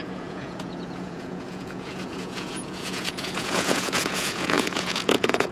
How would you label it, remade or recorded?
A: remade